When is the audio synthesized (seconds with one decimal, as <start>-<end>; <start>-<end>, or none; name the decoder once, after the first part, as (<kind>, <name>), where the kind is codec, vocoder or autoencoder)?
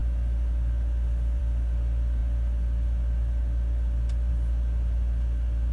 none